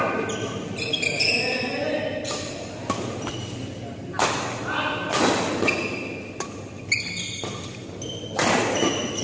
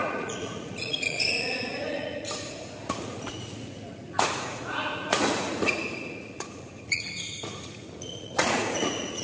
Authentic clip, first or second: first